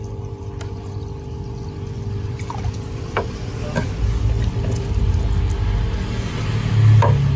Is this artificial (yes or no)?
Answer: no